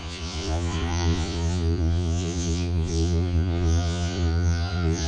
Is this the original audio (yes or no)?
no